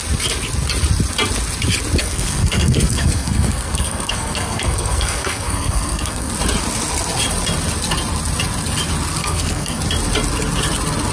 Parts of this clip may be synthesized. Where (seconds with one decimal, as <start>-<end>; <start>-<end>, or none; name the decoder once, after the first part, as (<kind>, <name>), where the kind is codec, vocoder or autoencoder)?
2.0-6.3 (codec, SNAC); 9.2-9.8